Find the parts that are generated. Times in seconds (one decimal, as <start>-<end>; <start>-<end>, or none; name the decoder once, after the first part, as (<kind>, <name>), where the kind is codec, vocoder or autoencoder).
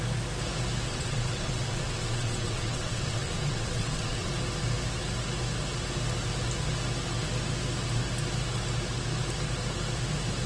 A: 0.9-4.3 (vocoder, WaveNeXt)